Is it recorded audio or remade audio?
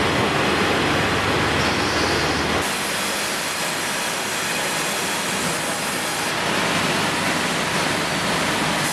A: recorded